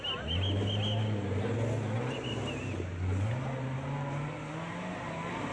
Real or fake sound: real